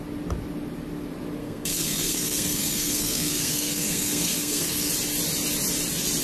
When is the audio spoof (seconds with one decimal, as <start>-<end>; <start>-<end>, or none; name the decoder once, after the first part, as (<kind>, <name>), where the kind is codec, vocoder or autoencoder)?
1.4-4.9 (codec, SNAC)